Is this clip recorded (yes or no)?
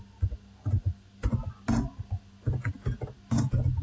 yes